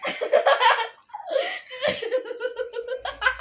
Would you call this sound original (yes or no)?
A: yes